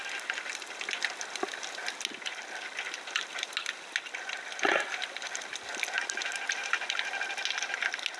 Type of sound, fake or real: real